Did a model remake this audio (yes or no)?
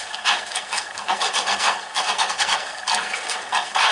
yes